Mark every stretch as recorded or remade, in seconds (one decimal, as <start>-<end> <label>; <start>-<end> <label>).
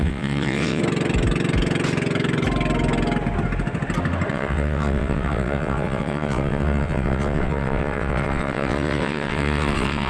0.0-0.8 remade; 0.8-4.3 recorded; 4.3-10.1 remade